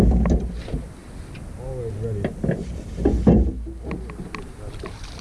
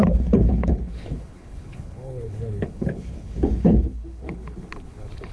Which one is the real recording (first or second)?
first